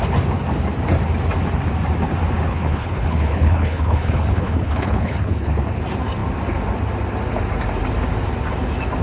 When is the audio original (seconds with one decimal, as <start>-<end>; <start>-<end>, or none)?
0.0-2.5; 5.8-9.0